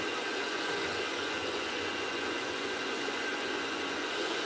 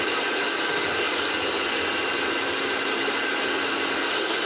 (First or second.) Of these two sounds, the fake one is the first